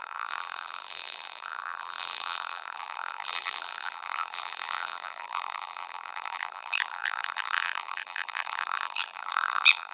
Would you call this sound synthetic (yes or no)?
yes